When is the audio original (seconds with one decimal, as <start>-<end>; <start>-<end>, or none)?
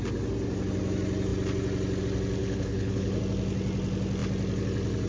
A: 0.0-2.4; 3.2-5.1